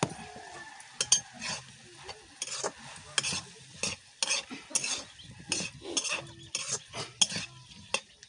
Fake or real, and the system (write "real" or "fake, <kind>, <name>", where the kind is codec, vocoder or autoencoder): real